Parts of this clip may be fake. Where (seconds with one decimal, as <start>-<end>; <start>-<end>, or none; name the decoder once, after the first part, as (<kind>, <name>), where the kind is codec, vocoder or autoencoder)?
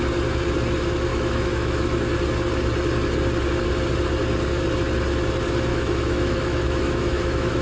1.1-2.2 (autoencoder, DAC-VAE); 5.7-7.6